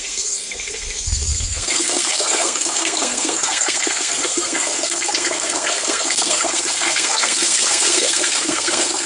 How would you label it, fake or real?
fake